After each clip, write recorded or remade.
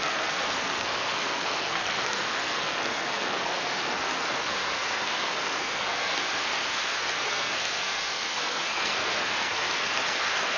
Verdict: remade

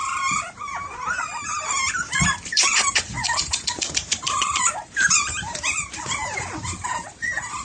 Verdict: remade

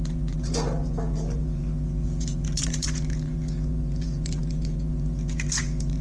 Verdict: remade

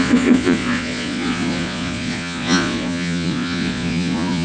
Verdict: remade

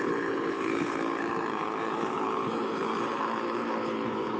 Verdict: remade